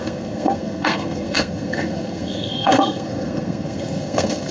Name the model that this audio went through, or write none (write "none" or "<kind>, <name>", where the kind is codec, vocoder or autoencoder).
codec, SNAC